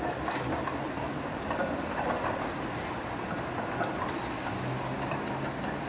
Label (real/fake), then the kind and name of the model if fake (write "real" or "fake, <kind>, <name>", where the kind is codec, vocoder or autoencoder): real